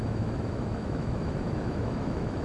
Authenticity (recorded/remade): remade